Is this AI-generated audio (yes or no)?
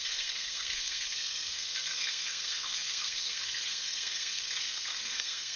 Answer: yes